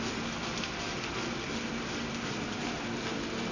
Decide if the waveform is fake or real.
real